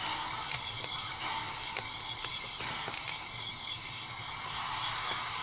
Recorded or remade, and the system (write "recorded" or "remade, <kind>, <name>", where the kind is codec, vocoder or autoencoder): recorded